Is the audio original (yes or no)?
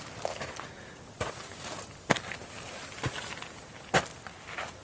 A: yes